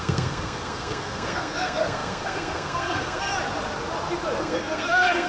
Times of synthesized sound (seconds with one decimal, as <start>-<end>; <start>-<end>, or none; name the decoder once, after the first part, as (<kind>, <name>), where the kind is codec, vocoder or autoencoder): 0.0-3.3 (codec, SNAC); 4.4-5.3